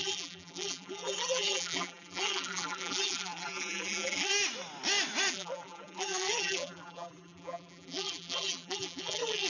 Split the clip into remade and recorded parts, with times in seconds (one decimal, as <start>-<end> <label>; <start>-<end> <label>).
0.0-4.3 remade; 4.3-5.3 recorded; 5.3-9.5 remade